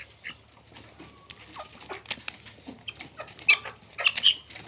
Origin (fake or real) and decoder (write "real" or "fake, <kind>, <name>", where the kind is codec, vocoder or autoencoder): real